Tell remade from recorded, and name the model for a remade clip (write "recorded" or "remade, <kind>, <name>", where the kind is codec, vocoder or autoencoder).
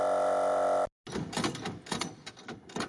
recorded